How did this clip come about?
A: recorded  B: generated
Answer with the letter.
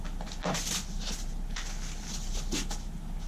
A